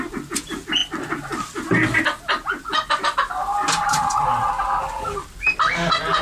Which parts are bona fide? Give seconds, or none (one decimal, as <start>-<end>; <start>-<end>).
0.0-6.2